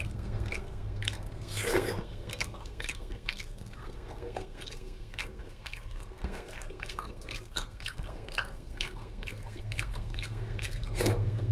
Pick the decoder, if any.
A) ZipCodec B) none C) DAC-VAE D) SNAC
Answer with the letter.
D